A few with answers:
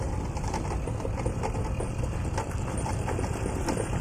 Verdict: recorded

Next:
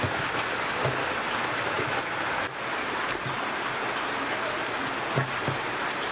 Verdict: recorded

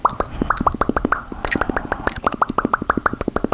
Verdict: recorded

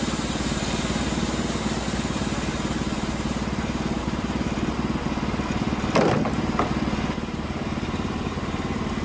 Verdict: recorded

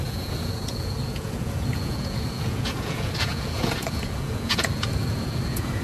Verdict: remade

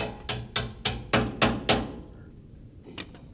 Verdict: recorded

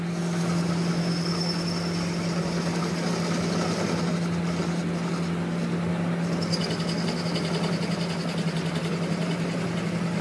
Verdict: recorded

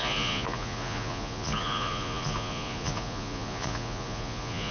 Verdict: remade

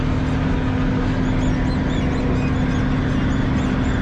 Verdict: recorded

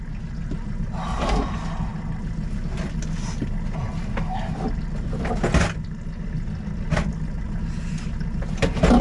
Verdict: recorded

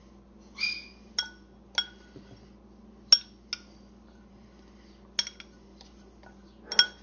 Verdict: recorded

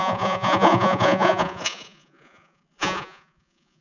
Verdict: remade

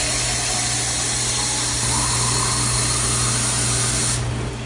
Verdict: recorded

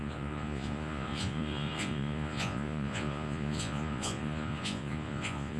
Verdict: remade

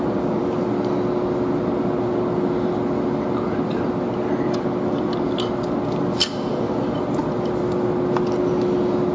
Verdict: recorded